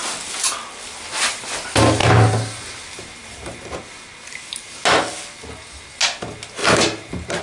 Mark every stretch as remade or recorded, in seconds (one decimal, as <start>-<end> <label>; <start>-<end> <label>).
0.0-2.0 recorded; 2.0-3.8 remade; 3.8-6.6 recorded; 6.6-7.4 remade

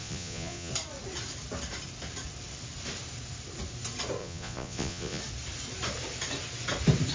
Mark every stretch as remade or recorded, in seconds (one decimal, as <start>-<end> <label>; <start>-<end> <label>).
0.0-0.7 remade; 0.7-4.2 recorded; 4.2-5.2 remade; 5.2-7.1 recorded

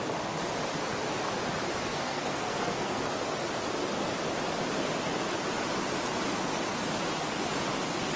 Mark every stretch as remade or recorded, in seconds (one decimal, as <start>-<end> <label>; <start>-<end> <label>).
0.0-1.9 recorded; 1.9-3.2 remade; 3.2-8.2 recorded

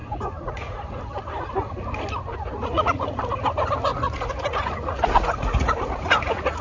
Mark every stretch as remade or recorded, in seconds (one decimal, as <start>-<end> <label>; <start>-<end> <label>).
0.0-1.0 remade; 1.0-2.3 recorded; 2.3-3.1 remade; 3.1-3.9 recorded; 3.9-6.6 remade